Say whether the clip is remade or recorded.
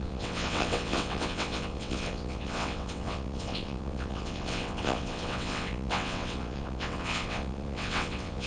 remade